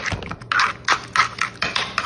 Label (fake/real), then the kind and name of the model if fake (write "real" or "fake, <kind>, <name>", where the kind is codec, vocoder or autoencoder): real